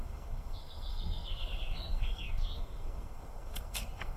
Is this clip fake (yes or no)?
yes